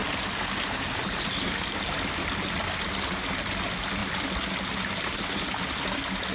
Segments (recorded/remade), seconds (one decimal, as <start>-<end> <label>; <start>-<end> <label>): 0.0-6.3 recorded